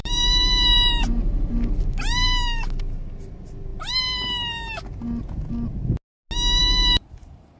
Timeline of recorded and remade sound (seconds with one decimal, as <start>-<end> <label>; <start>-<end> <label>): 0.0-1.5 remade; 1.5-6.6 recorded; 6.6-7.6 remade

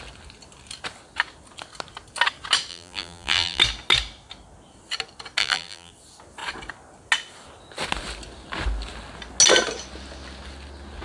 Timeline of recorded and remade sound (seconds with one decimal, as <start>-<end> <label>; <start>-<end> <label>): 0.0-2.7 recorded; 2.7-3.6 remade; 3.6-5.4 recorded; 5.4-5.9 remade; 5.9-11.0 recorded

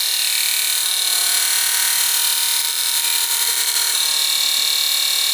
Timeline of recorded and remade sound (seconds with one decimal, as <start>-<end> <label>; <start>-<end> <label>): 0.0-2.6 recorded; 2.6-3.8 remade; 3.8-5.3 recorded

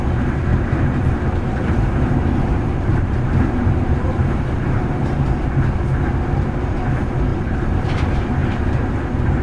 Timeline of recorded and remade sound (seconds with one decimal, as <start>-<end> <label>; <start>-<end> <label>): 0.0-0.5 recorded; 0.5-5.0 remade; 5.0-7.3 recorded; 7.3-8.0 remade; 8.0-8.4 recorded; 8.4-8.9 remade; 8.9-9.4 recorded

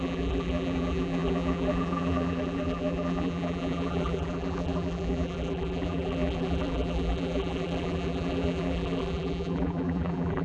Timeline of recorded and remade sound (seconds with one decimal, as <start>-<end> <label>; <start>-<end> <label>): 0.0-10.4 remade

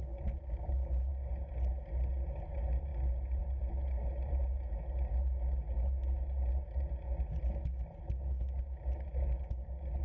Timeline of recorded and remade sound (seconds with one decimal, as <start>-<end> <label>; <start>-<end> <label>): 0.0-10.0 recorded

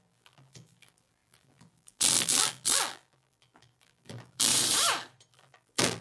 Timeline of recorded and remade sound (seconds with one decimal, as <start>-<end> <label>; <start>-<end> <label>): 0.0-4.5 remade; 4.5-5.3 recorded; 5.3-6.0 remade

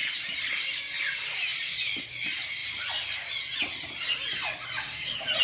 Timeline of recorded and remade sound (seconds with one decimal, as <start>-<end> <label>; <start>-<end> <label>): 0.0-0.5 remade; 0.5-1.5 recorded; 1.5-2.1 remade; 2.1-2.6 recorded; 2.6-3.3 remade; 3.3-5.4 recorded